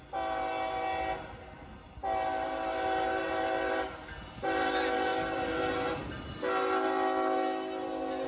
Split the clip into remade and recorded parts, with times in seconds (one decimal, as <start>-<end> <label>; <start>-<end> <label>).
0.0-8.3 recorded